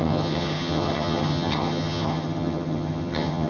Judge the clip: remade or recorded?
remade